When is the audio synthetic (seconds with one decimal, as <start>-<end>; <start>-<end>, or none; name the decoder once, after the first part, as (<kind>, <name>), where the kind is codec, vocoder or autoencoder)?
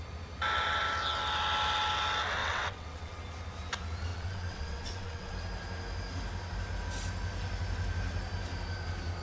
2.4-3.2 (vocoder, WaveNeXt); 4.1-5.3